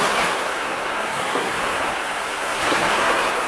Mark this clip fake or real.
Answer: fake